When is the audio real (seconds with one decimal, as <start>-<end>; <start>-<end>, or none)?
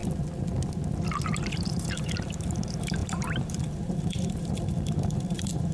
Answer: 0.0-1.5